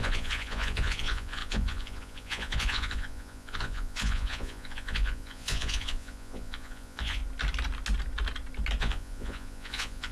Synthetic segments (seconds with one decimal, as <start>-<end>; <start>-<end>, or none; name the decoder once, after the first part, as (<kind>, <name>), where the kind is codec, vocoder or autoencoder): 0.0-7.2 (vocoder, Vocos); 8.8-10.1